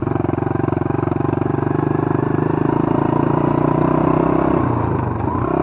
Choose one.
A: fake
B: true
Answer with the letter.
B